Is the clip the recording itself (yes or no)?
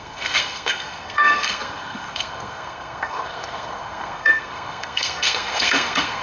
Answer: no